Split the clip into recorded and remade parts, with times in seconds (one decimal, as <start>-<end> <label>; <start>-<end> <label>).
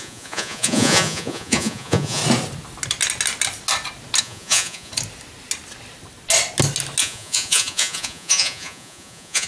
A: 0.0-2.2 remade; 2.2-4.2 recorded; 4.2-4.9 remade; 4.9-7.0 recorded; 7.0-9.5 remade